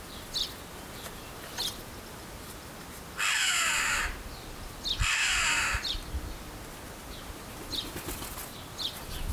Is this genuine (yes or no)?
yes